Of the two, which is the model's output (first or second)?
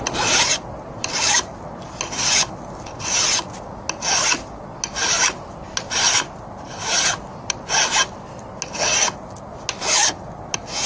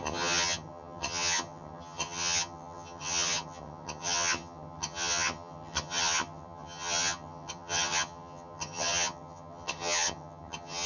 second